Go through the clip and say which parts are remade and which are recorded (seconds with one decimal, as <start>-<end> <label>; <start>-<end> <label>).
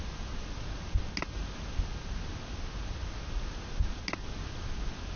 0.0-5.2 recorded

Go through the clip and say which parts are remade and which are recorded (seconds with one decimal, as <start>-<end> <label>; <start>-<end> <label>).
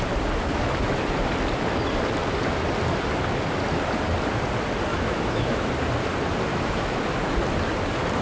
0.0-4.9 recorded; 4.9-5.7 remade; 5.7-6.5 recorded; 6.5-7.0 remade; 7.0-8.2 recorded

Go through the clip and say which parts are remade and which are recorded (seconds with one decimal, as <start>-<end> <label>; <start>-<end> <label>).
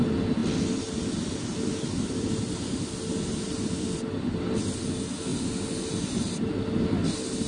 0.0-7.5 recorded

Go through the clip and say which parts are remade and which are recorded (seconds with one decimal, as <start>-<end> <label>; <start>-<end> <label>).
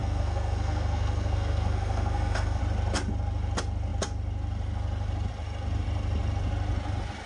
0.0-2.6 remade; 2.6-7.3 recorded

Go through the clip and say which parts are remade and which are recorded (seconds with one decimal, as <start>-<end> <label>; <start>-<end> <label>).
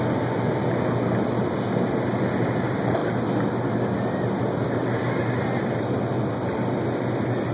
0.0-7.5 recorded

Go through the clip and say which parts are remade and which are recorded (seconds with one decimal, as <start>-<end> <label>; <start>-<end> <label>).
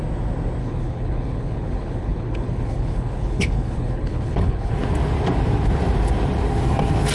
0.0-0.6 recorded; 0.6-4.7 remade; 4.7-7.1 recorded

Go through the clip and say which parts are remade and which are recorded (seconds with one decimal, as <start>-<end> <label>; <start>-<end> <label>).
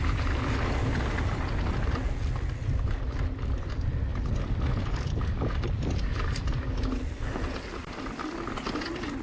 0.0-9.2 recorded